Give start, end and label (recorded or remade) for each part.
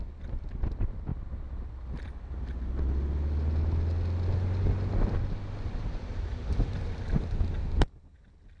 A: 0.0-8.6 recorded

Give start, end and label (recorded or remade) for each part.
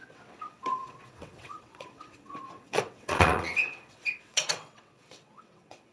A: 0.0-5.9 remade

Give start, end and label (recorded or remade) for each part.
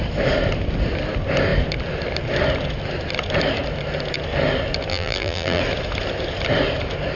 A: 0.0-4.9 recorded; 4.9-5.6 remade; 5.6-7.2 recorded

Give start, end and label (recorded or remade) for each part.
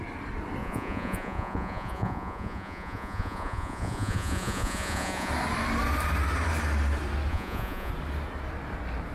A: 0.0-0.6 recorded; 0.6-5.3 remade; 5.3-7.3 recorded; 7.3-7.9 remade; 7.9-9.1 recorded